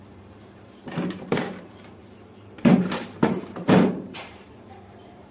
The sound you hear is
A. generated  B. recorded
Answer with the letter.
A